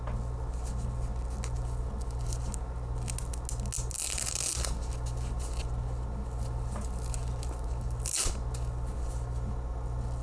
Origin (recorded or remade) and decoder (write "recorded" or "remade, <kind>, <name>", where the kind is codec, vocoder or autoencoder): recorded